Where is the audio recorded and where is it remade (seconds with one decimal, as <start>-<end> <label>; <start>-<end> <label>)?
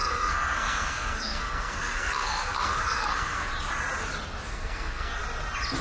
0.0-3.5 remade; 3.5-4.5 recorded; 4.5-5.2 remade; 5.2-5.8 recorded